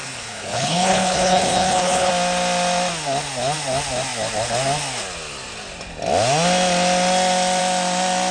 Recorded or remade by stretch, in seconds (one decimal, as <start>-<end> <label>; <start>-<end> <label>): 0.0-2.1 remade; 2.1-8.3 recorded